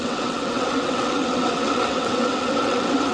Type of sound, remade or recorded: remade